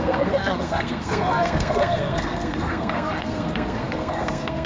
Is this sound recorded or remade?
remade